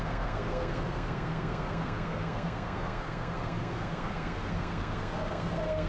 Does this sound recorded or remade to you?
remade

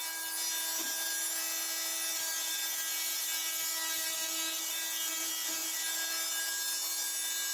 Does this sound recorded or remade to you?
recorded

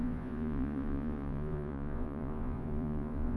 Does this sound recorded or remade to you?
remade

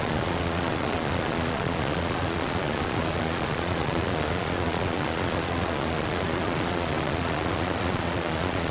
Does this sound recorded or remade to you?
remade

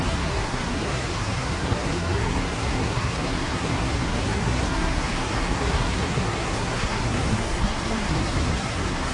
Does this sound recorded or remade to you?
remade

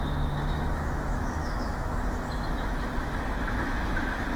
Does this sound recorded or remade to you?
remade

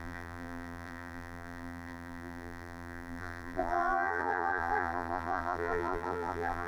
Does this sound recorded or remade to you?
remade